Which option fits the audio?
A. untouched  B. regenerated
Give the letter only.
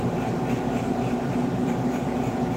B